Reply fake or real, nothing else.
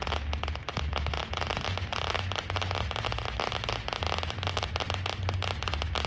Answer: real